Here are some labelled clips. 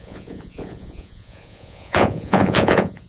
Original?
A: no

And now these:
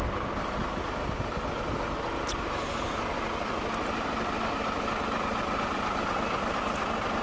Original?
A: yes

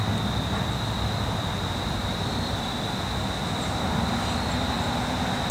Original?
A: yes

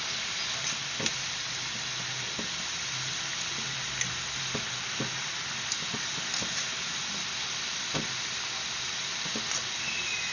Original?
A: yes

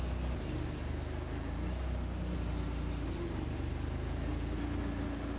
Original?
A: yes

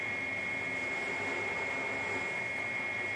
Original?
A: yes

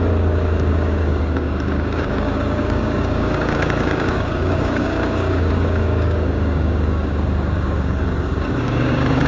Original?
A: no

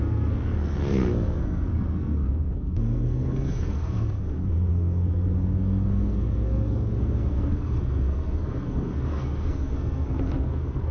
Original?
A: no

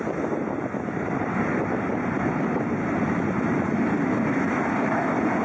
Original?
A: yes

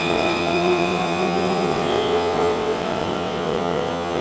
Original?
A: no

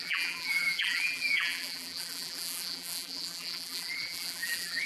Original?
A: no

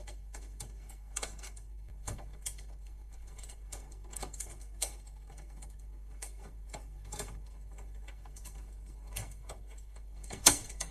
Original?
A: no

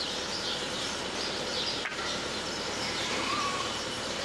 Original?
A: no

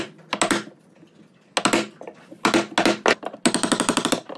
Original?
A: yes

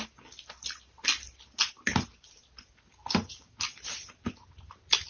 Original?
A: yes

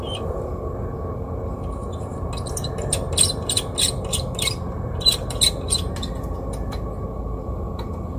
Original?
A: yes